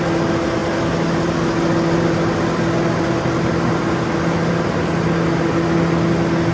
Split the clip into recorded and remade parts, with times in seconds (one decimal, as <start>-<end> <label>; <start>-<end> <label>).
0.0-6.5 recorded